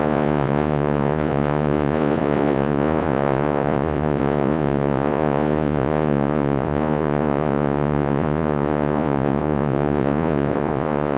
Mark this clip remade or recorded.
remade